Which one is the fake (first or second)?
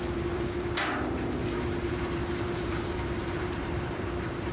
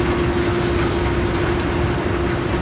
first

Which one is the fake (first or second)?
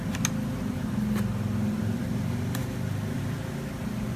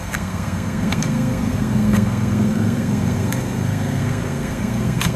second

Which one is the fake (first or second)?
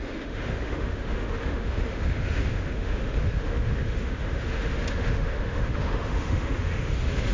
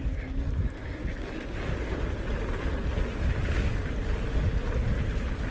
first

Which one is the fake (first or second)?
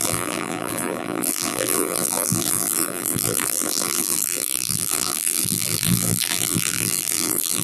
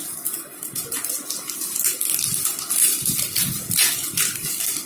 first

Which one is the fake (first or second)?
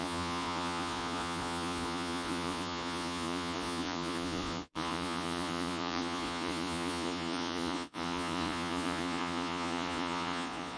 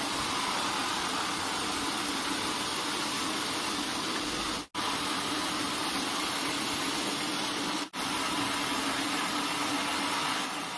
first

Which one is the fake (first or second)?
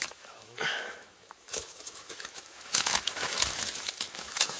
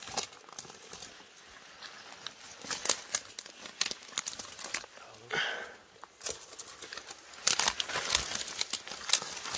first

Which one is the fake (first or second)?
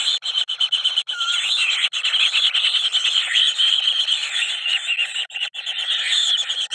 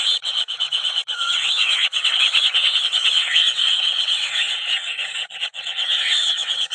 second